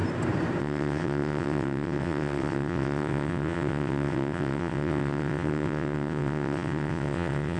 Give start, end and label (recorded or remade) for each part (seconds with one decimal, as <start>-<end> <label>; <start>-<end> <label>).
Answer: 0.0-0.6 recorded; 0.6-7.6 remade